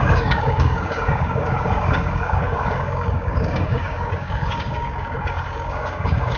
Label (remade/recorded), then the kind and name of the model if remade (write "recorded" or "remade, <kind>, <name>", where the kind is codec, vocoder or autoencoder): remade, codec, DAC